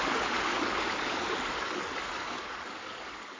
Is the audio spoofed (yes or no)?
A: yes